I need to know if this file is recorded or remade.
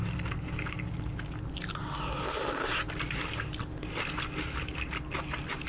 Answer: recorded